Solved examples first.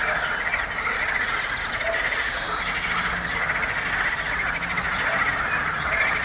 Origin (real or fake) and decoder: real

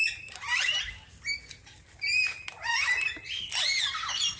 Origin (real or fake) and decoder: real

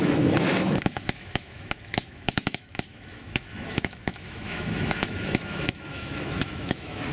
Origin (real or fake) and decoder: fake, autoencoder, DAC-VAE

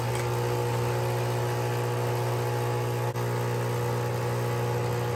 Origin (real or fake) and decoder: real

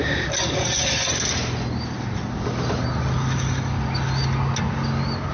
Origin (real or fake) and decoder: real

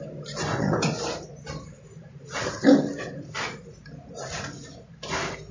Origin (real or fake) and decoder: real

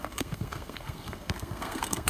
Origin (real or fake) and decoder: fake, codec, SNAC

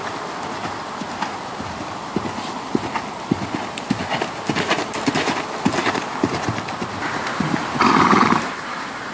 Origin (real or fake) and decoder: real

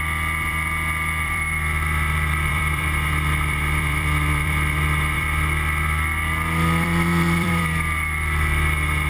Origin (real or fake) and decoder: fake, vocoder, BigVGAN v2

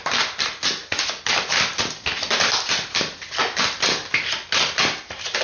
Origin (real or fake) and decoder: real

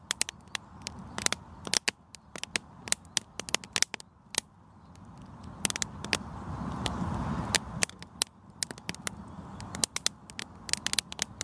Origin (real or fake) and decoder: real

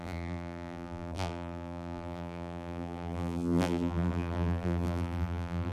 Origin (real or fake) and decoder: fake, vocoder, BigVGAN v2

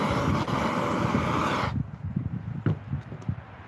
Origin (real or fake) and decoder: real